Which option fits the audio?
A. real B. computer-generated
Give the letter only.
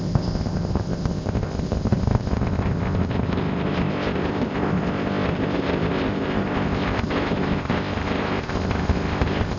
B